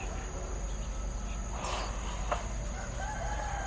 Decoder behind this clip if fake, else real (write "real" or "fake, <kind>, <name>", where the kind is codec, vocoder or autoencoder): real